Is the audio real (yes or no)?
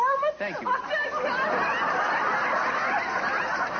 yes